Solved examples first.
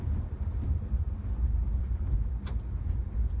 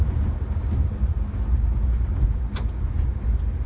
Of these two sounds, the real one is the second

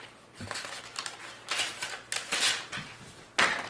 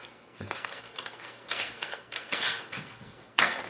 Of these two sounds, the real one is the first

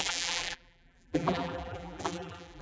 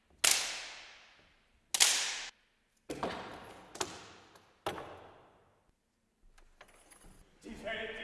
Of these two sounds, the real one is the second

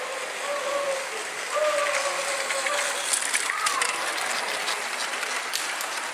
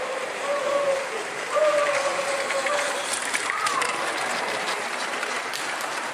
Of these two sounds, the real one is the first